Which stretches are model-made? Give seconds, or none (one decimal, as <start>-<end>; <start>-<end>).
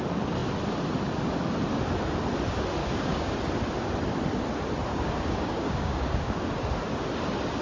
2.8-3.3; 4.9-6.5